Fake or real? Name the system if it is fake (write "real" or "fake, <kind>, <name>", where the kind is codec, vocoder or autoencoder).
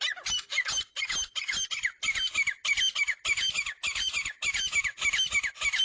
real